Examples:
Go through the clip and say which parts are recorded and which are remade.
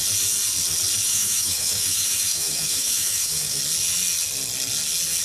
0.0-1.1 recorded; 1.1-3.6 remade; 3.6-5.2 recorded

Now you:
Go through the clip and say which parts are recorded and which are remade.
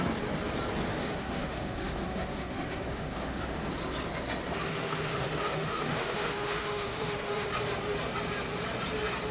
0.0-0.9 recorded; 0.9-3.7 remade; 3.7-4.7 recorded; 4.7-7.5 remade; 7.5-9.3 recorded